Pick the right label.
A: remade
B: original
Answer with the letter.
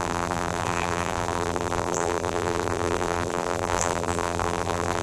A